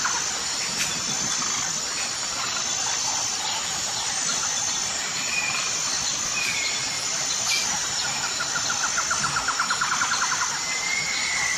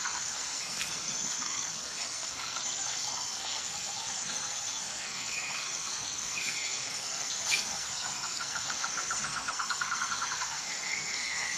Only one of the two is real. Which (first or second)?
first